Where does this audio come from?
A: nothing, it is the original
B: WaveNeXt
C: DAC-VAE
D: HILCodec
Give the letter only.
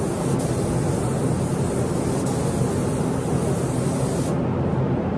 A